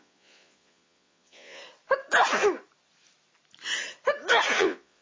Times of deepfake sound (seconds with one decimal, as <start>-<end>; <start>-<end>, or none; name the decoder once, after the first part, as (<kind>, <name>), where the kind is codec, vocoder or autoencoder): 0.0-1.6 (vocoder, Vocos); 4.6-5.0